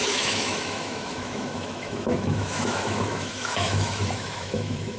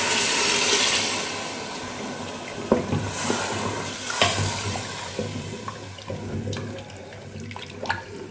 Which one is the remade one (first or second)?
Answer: first